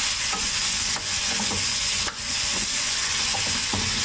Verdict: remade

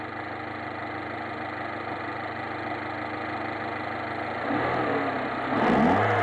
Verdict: recorded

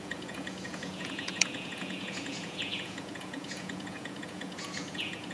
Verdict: remade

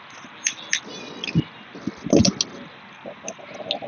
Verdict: recorded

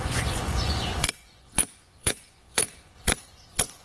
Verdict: remade